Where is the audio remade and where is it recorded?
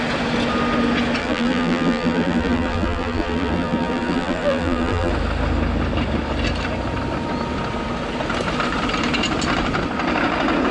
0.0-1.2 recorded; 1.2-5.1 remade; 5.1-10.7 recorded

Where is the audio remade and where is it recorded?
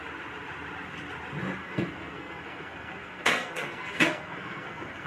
0.0-1.6 recorded; 1.6-5.1 remade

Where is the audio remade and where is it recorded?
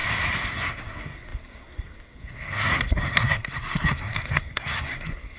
0.0-0.5 recorded; 0.5-5.4 remade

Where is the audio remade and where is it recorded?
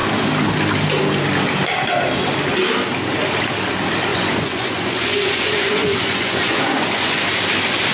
0.0-4.1 recorded; 4.1-7.2 remade; 7.2-7.9 recorded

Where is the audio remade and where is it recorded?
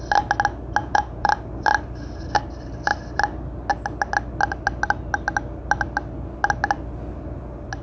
0.0-0.8 recorded; 0.8-1.3 remade; 1.3-7.8 recorded